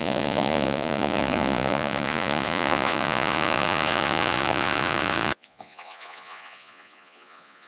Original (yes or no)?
no